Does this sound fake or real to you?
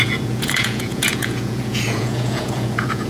fake